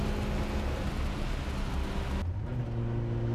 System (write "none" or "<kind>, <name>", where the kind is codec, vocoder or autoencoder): none